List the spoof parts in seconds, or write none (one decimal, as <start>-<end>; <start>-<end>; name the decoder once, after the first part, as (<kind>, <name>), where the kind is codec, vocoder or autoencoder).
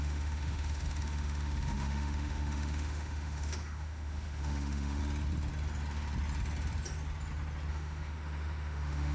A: 0.0-5.0 (autoencoder, DAC-VAE); 7.7-9.1